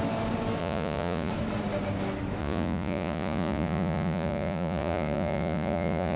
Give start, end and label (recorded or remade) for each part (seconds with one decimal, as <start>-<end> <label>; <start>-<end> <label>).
0.0-0.6 recorded; 0.6-1.3 remade; 1.3-2.4 recorded; 2.4-6.2 remade